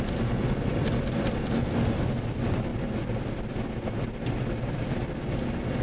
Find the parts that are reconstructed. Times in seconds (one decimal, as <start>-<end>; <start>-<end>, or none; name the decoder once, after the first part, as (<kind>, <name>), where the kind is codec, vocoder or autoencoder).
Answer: none